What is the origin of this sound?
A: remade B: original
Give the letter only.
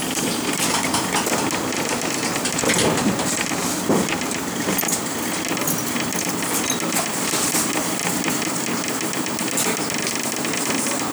B